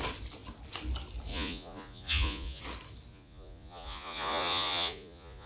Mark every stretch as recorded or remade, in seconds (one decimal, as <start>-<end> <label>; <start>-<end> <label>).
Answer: 0.0-1.3 recorded; 1.3-2.6 remade; 2.6-3.1 recorded; 3.1-5.5 remade